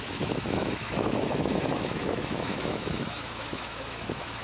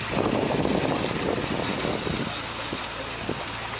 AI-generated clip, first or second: first